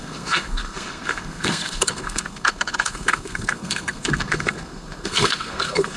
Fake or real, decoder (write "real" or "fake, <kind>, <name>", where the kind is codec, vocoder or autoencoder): fake, codec, SNAC